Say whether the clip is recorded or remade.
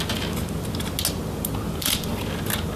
recorded